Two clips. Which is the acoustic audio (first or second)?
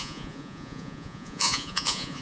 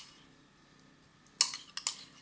second